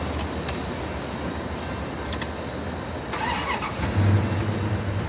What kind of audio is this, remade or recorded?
recorded